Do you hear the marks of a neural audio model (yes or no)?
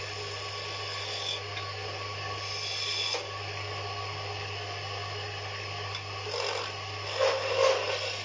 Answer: no